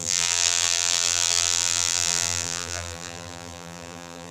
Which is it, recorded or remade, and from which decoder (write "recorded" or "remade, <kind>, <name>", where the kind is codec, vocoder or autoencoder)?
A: remade, vocoder, BigVGAN v2